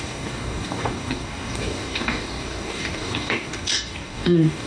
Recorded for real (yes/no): no